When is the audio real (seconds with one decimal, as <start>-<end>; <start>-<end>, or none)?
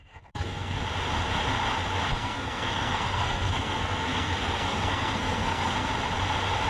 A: 0.8-2.1; 5.9-6.7